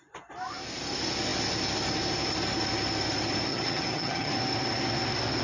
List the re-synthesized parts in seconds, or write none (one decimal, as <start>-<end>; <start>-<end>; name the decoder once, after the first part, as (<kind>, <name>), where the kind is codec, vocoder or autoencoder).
3.5-4.3 (vocoder, HiFi-GAN)